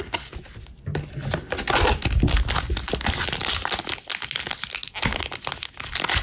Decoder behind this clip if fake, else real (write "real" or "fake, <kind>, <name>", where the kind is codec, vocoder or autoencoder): real